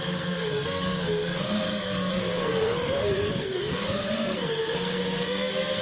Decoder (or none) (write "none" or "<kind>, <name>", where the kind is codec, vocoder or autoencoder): codec, SNAC